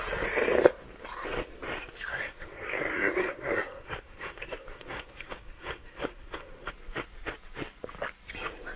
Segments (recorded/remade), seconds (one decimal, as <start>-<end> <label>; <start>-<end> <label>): 0.0-2.1 recorded; 2.1-6.7 remade; 6.7-8.8 recorded